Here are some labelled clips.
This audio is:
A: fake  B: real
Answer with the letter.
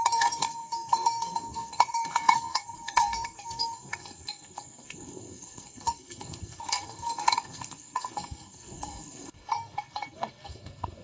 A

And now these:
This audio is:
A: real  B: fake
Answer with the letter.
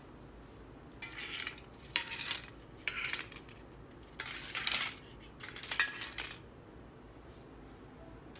A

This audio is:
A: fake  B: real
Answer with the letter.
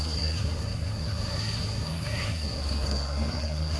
A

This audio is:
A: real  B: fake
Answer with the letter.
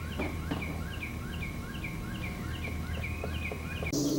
A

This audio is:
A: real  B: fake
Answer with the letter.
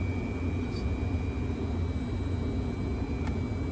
A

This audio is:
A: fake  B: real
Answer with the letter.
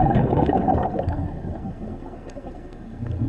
A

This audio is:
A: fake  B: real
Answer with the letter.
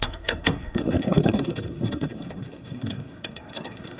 A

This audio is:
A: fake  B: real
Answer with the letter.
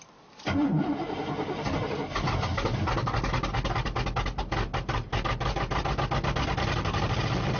B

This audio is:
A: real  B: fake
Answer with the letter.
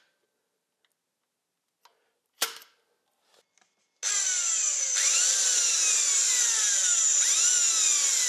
A